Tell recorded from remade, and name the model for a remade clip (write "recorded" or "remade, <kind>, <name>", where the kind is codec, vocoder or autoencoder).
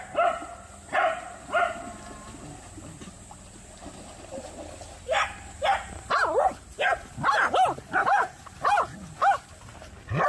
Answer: recorded